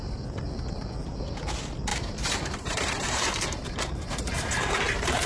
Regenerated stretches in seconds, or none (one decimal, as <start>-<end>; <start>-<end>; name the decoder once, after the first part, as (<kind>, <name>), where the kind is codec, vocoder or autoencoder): 1.9-5.3 (vocoder, BigVGAN v2)